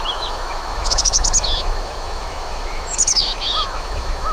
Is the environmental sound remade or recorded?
remade